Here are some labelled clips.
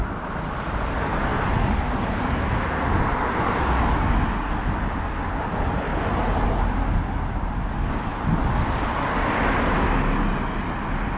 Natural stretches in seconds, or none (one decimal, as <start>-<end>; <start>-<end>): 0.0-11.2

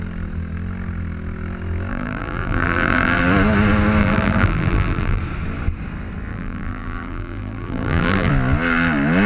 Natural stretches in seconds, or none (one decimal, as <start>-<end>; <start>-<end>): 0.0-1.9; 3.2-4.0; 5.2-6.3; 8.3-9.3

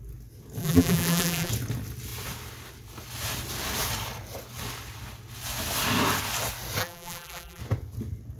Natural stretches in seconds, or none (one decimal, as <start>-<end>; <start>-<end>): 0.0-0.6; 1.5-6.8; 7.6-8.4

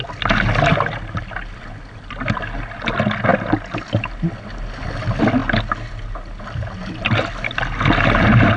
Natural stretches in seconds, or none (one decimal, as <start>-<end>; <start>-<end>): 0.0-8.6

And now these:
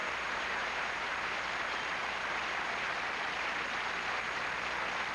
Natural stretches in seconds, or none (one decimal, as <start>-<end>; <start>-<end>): 1.3-5.1

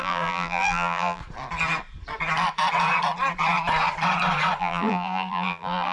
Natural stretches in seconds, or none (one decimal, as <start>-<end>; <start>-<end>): 1.2-4.6

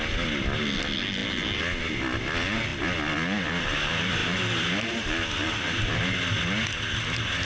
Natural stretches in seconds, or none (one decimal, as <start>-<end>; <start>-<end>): 0.0-7.4

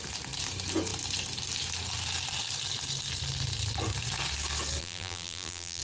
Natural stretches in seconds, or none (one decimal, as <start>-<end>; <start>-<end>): 0.0-4.8